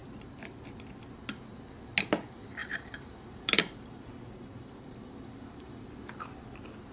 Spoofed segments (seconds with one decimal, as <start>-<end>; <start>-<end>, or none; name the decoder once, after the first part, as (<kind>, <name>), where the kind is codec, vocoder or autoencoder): 2.6-5.9 (vocoder, BigVGAN v2)